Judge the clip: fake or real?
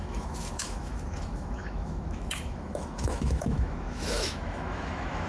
fake